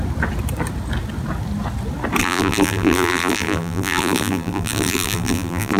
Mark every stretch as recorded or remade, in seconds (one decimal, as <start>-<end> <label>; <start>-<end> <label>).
0.0-2.2 recorded; 2.2-5.8 remade